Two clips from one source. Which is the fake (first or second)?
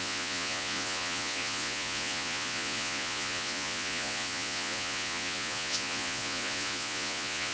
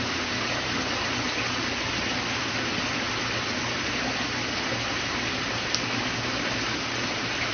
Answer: first